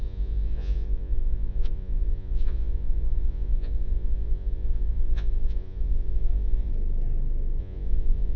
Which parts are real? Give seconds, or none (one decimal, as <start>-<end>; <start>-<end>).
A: 6.7-7.6